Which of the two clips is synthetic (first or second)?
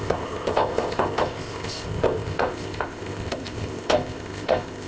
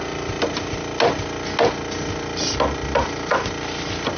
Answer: first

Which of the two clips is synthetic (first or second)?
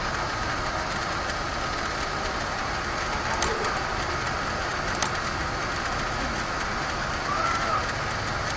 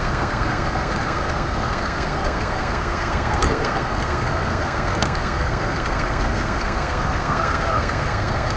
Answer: second